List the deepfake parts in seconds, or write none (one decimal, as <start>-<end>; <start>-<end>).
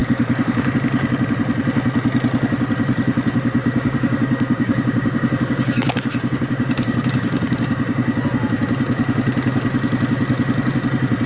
0.0-0.7; 3.6-8.2